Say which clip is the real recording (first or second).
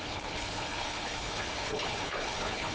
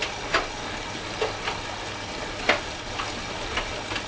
second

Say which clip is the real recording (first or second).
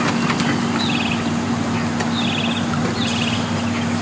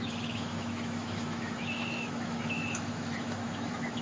first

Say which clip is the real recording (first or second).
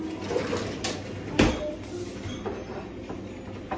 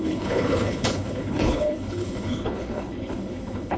first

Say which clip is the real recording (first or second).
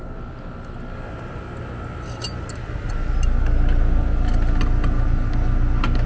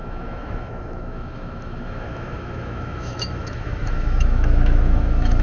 first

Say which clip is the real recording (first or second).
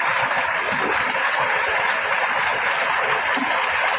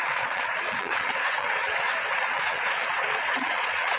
first